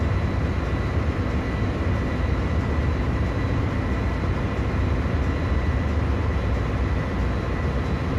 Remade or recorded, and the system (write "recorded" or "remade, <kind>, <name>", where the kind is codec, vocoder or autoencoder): recorded